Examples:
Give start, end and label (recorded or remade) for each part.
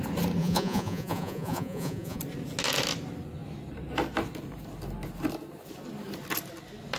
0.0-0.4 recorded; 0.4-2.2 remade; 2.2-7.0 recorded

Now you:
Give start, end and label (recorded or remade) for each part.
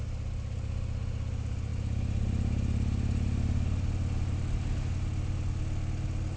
0.0-6.4 recorded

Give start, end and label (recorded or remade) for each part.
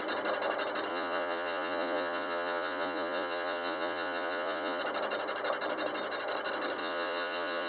0.0-0.9 recorded; 0.9-4.8 remade; 4.8-6.8 recorded; 6.8-7.7 remade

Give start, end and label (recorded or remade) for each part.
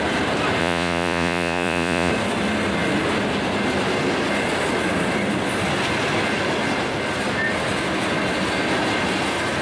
0.0-0.6 recorded; 0.6-2.1 remade; 2.1-9.6 recorded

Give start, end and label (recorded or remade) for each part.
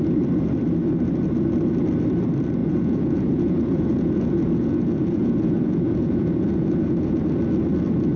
0.0-2.6 recorded; 2.6-7.2 remade; 7.2-8.2 recorded